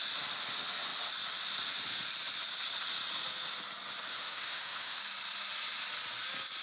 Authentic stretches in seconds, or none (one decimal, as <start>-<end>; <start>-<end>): 0.0-4.1; 5.0-6.6